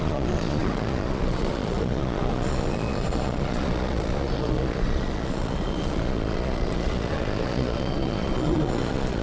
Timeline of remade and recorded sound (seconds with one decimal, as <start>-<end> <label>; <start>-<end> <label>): 0.0-9.2 remade